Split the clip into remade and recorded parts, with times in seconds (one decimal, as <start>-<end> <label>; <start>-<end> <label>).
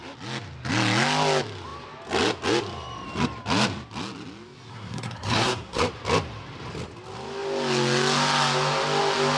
0.0-4.7 recorded; 4.7-5.8 remade; 5.8-9.4 recorded